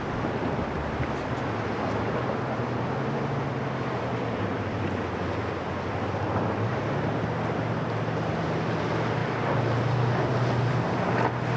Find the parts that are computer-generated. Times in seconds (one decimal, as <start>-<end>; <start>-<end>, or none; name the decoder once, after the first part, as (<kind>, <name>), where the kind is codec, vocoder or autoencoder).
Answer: 4.5-5.9 (vocoder, BigVGAN v2)